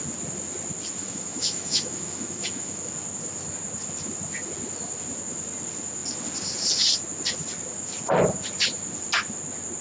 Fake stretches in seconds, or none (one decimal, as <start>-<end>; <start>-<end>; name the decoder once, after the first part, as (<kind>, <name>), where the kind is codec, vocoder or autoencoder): 1.0-2.9 (autoencoder, DAC-VAE)